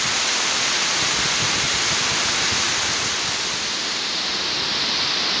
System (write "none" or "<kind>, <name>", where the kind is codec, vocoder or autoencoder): none